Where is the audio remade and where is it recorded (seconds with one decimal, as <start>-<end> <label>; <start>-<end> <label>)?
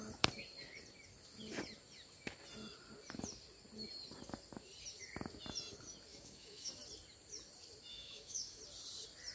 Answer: 0.0-6.1 recorded; 6.1-6.7 remade; 6.7-7.9 recorded; 7.9-8.6 remade; 8.6-9.3 recorded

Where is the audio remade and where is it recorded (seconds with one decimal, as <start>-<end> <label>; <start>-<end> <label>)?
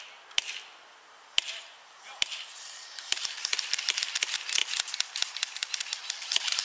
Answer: 0.0-0.8 recorded; 0.8-4.1 remade; 4.1-6.6 recorded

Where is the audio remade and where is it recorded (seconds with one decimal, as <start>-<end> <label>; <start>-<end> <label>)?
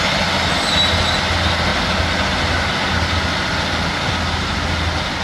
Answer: 0.0-5.2 recorded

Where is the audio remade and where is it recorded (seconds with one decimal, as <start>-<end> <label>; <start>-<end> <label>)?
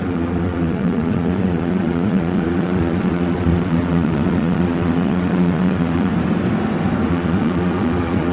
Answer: 0.0-6.1 remade; 6.1-7.1 recorded; 7.1-8.3 remade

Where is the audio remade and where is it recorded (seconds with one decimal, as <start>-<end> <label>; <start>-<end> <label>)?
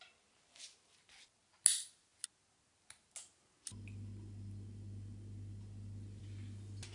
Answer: 0.0-6.9 recorded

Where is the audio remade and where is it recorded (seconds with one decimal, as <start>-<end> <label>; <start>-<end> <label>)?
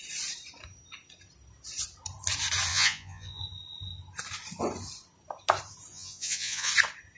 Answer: 0.0-2.7 recorded; 2.7-3.4 remade; 3.4-5.9 recorded; 5.9-6.7 remade; 6.7-7.2 recorded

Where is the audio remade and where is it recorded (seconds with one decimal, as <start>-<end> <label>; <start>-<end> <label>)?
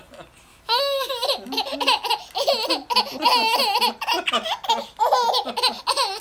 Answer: 0.0-0.5 recorded; 0.5-1.1 remade; 1.1-6.2 recorded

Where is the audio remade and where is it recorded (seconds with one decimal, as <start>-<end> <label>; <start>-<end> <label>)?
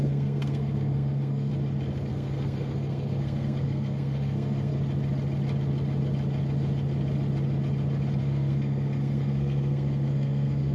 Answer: 0.0-1.5 remade; 1.5-2.1 recorded; 2.1-4.7 remade; 4.7-8.2 recorded; 8.2-10.7 remade